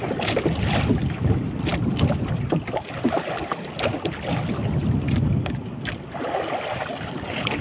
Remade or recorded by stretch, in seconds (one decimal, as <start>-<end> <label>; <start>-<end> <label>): 0.0-7.6 recorded